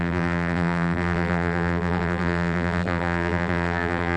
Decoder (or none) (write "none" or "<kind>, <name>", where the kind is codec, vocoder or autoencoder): vocoder, BigVGAN v2